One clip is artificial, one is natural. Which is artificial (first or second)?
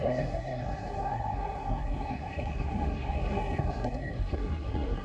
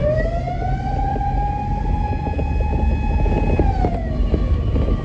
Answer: first